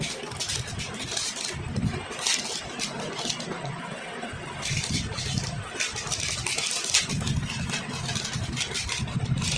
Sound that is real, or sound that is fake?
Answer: real